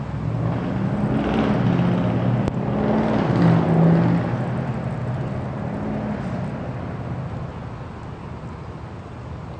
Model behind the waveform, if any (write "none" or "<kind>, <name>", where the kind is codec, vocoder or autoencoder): none